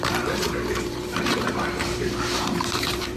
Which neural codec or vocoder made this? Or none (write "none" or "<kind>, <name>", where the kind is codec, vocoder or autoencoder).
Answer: vocoder, BigVGAN v2